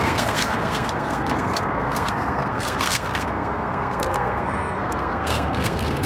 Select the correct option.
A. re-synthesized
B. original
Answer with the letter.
A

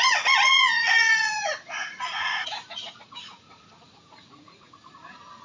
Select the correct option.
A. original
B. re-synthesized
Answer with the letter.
B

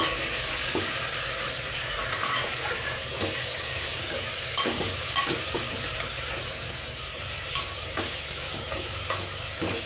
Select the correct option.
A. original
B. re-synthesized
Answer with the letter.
B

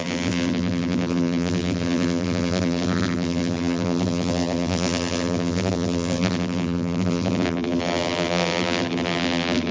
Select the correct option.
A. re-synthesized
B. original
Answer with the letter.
A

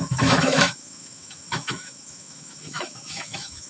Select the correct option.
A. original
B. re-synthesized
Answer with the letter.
B